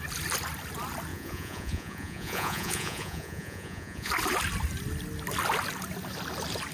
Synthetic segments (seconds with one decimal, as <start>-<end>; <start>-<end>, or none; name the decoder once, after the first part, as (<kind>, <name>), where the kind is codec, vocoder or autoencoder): 1.1-4.1 (vocoder, Vocos)